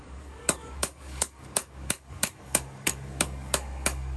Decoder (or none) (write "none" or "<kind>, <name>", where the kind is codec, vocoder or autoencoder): codec, DAC